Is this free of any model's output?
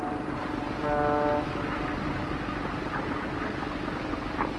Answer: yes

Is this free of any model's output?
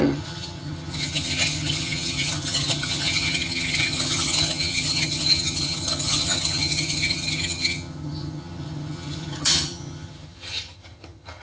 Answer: no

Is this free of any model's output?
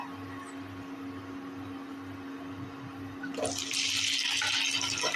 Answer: yes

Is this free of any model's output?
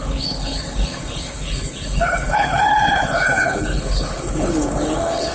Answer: no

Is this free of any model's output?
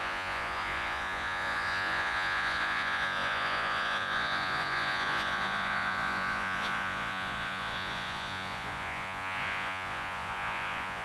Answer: no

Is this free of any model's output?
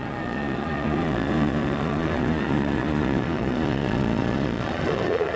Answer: no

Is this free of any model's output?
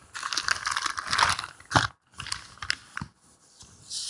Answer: yes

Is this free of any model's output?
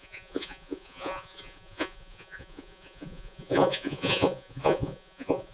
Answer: no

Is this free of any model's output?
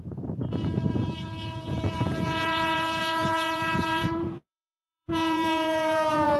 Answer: no